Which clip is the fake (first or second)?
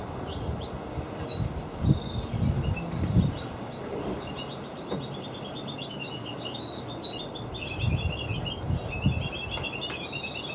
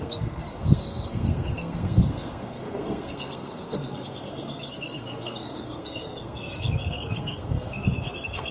second